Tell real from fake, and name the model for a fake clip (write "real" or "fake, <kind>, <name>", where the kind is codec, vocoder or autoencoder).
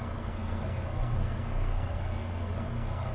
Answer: fake, codec, SNAC